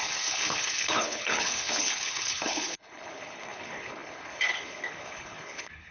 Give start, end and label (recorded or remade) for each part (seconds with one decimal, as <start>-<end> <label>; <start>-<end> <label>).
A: 0.0-5.9 remade